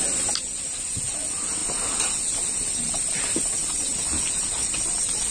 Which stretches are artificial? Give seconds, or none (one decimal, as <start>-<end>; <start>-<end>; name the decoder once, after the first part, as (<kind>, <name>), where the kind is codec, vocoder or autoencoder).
none